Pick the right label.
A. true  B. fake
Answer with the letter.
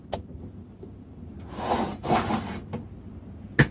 A